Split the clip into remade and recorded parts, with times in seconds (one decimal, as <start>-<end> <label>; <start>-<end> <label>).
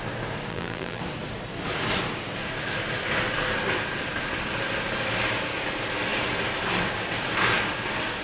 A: 0.0-0.5 recorded; 0.5-1.0 remade; 1.0-8.2 recorded